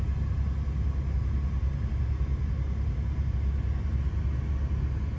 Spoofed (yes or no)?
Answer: no